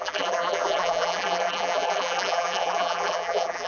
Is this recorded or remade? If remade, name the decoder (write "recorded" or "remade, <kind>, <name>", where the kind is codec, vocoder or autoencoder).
remade, vocoder, BigVGAN v2